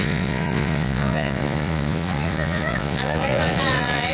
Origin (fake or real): fake